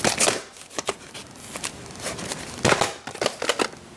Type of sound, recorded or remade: recorded